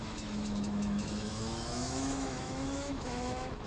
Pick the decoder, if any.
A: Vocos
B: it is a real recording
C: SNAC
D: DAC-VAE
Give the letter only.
D